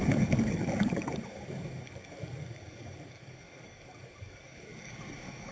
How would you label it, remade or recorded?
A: remade